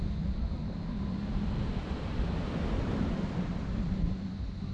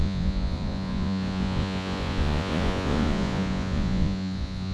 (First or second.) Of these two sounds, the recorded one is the first